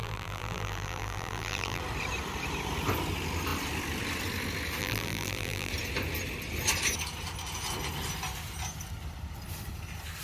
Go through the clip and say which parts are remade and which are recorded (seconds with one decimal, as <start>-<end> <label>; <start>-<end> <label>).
0.0-1.8 remade; 1.8-4.8 recorded; 4.8-5.7 remade; 5.7-10.2 recorded